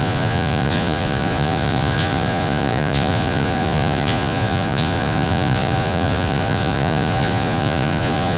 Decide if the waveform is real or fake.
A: fake